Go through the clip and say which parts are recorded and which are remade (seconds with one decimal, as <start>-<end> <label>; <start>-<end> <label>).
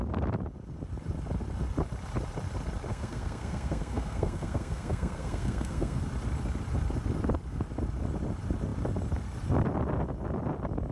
0.0-2.9 recorded; 2.9-6.0 remade; 6.0-10.9 recorded